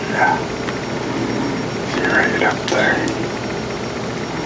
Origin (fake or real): real